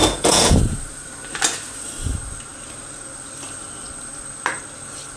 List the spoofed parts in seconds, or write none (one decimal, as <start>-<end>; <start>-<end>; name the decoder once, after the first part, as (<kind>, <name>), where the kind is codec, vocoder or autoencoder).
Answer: 0.0-0.6 (vocoder, Vocos)